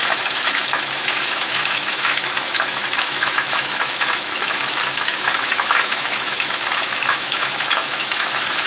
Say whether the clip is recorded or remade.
remade